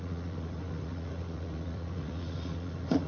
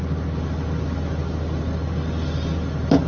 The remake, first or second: first